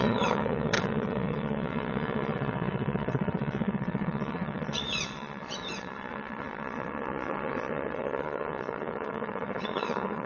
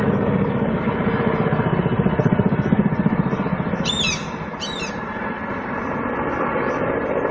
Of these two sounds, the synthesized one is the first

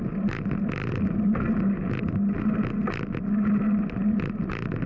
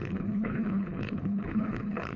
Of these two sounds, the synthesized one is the second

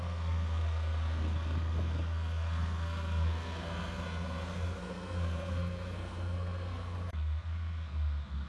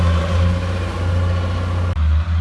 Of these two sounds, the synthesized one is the first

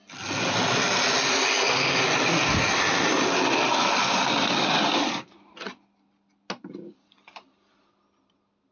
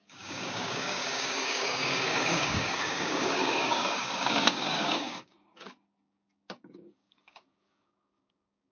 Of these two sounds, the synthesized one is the second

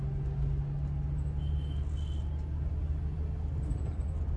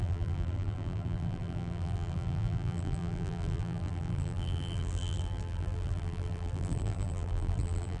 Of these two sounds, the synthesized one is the second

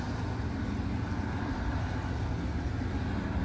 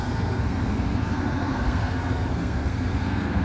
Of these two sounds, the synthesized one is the second